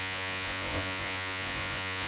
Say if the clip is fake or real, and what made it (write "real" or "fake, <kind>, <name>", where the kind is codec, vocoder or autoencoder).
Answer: fake, vocoder, Vocos